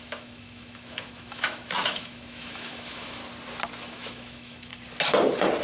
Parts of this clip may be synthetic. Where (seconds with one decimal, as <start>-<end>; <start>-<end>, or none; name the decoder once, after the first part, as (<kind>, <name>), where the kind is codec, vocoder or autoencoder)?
0.0-3.2 (autoencoder, DAC-VAE); 3.9-4.7